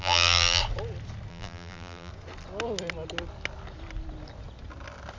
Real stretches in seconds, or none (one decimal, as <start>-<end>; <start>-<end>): 0.6-1.3; 2.1-5.2